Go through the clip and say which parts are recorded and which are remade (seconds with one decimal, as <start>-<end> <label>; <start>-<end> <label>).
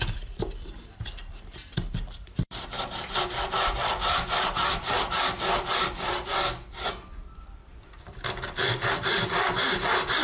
0.0-10.2 remade